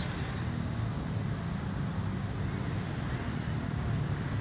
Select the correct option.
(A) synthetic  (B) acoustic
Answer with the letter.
B